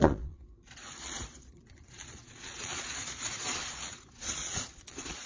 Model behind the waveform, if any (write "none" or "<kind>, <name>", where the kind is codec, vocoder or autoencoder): vocoder, Vocos